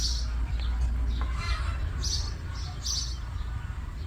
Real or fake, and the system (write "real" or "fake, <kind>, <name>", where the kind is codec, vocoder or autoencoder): real